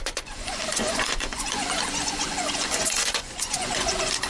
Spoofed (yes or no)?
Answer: yes